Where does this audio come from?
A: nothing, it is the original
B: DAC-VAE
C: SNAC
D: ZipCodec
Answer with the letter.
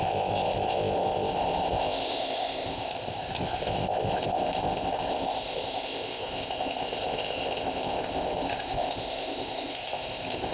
D